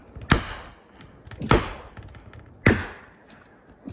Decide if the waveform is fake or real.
real